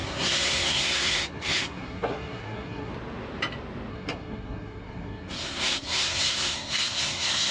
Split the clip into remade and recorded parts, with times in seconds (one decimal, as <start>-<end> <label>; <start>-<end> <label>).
0.0-2.9 remade; 2.9-3.9 recorded; 3.9-7.5 remade